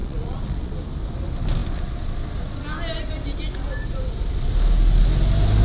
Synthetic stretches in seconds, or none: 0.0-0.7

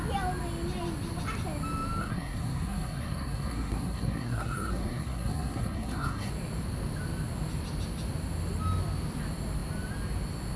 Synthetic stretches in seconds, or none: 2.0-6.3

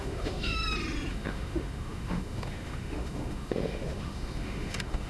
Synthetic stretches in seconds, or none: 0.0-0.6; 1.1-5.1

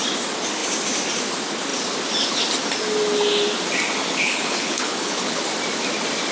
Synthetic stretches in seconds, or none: 4.0-5.4